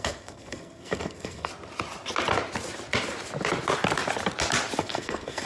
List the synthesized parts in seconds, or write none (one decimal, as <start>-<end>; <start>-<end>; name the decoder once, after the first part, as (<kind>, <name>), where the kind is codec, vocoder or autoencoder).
0.0-1.5 (codec, SNAC); 4.8-5.5